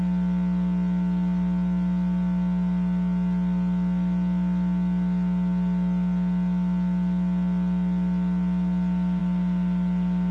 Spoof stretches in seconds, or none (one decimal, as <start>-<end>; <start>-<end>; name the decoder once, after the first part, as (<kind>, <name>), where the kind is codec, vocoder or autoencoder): none